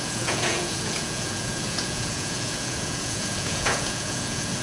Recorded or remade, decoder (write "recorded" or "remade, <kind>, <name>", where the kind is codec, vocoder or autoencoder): remade, vocoder, Vocos